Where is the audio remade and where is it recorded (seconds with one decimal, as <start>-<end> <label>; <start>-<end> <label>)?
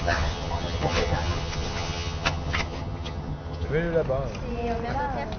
0.0-3.7 remade; 3.7-5.4 recorded